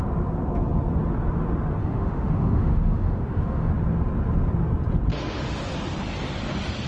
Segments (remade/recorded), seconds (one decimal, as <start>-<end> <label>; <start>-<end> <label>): 0.0-1.8 recorded; 1.8-3.7 remade; 3.7-5.1 recorded; 5.1-5.6 remade; 5.6-6.9 recorded